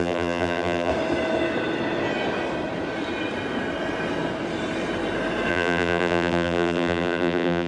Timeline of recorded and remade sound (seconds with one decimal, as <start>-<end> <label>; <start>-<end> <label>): 0.0-0.9 remade; 0.9-5.5 recorded; 5.5-7.7 remade